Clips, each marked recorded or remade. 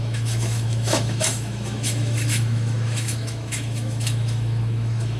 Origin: remade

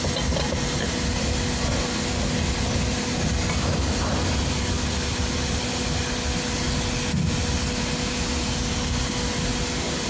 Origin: recorded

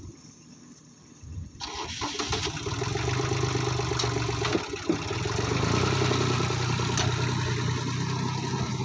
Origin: recorded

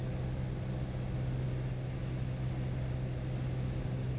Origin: recorded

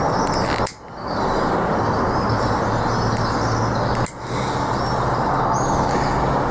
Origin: recorded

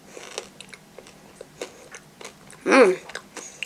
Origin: recorded